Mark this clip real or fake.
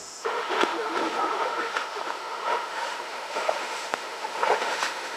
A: fake